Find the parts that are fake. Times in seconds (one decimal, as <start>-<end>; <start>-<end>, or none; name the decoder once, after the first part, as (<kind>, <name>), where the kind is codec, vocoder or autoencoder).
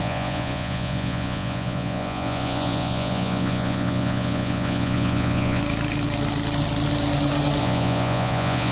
0.0-5.6 (vocoder, Vocos); 7.6-8.7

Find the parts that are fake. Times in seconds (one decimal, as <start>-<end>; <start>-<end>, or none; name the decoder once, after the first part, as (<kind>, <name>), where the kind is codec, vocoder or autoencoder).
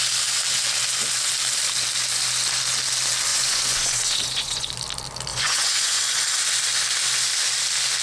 3.3-4.7 (vocoder, Vocos); 5.3-6.0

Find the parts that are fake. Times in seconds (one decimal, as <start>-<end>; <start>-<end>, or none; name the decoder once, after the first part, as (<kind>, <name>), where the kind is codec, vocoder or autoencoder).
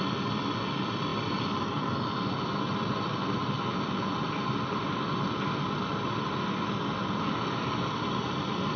none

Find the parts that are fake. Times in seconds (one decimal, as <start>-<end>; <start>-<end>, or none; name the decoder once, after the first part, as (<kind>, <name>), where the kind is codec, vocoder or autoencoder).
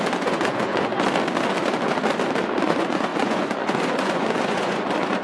0.0-0.9 (vocoder, Vocos); 2.6-5.2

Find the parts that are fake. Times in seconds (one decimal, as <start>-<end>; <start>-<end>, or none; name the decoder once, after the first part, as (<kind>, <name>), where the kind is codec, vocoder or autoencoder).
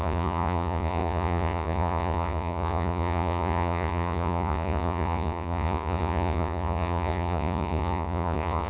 0.0-8.7 (vocoder, Vocos)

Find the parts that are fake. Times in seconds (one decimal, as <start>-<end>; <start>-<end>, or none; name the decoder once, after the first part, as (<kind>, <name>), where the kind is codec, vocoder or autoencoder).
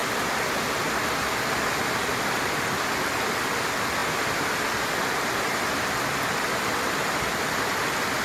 none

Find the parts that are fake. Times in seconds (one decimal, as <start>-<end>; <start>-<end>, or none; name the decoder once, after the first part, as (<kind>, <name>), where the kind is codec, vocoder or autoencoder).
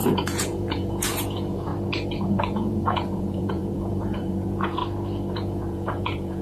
0.0-1.7 (vocoder, Vocos); 2.4-4.8; 5.3-6.4